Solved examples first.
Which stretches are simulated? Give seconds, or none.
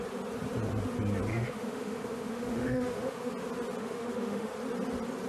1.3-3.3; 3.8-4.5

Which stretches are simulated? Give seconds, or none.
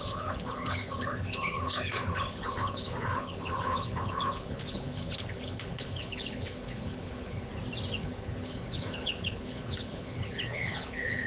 0.0-7.5; 8.0-11.3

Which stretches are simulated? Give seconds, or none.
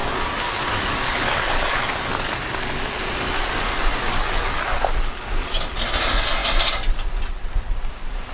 0.0-2.3; 4.1-4.9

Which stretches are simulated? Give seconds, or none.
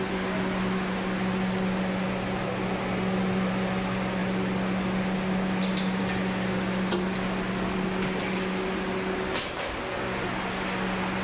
none